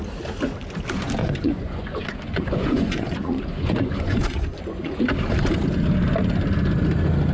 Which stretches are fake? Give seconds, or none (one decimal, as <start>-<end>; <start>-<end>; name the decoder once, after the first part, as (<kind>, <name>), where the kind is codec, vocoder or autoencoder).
1.2-5.0 (vocoder, Vocos)

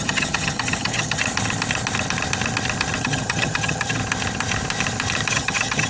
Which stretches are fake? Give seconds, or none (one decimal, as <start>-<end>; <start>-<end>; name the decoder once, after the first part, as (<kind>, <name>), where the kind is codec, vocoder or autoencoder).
0.0-1.2 (vocoder, HiFi-GAN); 3.0-4.0; 5.3-5.9

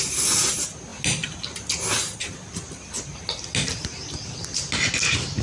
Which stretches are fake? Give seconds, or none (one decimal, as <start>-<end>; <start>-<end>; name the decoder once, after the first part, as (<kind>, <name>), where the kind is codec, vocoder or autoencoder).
none

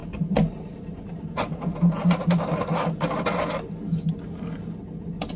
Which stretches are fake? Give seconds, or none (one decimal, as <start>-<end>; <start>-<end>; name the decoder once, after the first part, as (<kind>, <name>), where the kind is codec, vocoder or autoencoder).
none

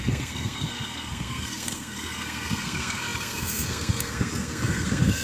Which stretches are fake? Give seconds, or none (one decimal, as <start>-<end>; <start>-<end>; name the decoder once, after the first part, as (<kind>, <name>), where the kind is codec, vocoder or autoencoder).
0.0-5.2 (codec, SNAC)

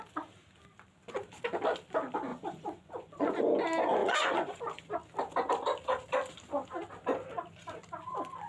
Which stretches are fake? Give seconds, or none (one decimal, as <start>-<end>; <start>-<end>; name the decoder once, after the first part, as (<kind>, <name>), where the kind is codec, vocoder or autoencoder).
2.3-3.4 (vocoder, Vocos); 4.0-4.6

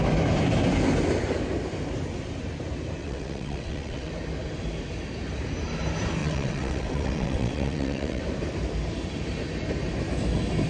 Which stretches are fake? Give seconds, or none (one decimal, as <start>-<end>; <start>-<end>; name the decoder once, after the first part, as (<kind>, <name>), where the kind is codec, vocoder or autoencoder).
3.0-4.1 (vocoder, WaveNeXt); 6.2-8.2